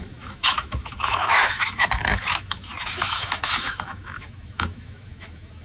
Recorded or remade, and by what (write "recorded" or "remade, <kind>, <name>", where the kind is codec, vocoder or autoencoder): remade, autoencoder, DAC-VAE